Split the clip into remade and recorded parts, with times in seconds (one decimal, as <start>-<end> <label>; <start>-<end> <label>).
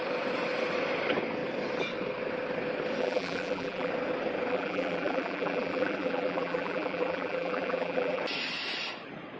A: 0.0-3.0 recorded; 3.0-3.9 remade; 3.9-4.5 recorded; 4.5-8.2 remade; 8.2-9.4 recorded